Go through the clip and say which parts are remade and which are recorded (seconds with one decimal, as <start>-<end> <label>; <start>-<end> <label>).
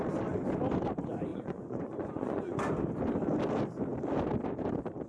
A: 0.0-1.3 recorded; 1.3-2.6 remade; 2.6-5.1 recorded